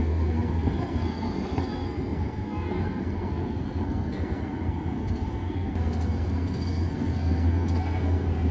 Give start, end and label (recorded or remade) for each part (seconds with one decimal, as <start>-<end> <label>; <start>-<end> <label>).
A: 0.0-8.5 remade